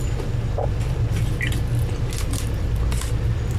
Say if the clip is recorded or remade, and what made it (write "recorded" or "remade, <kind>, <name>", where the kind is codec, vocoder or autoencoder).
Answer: recorded